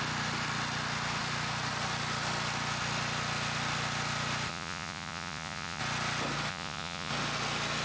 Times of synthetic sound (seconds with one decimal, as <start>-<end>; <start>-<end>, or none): 4.5-5.8; 6.5-7.1